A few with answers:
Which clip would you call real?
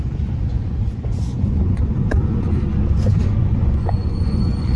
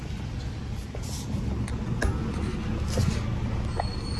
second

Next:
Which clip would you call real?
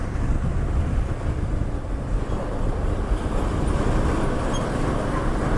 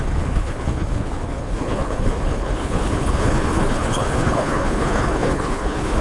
first